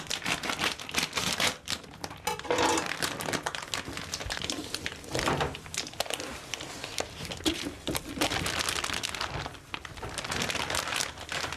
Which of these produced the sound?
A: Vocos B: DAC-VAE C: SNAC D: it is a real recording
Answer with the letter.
D